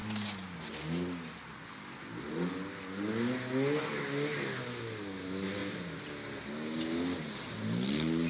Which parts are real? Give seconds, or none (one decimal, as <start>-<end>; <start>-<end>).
0.0-8.3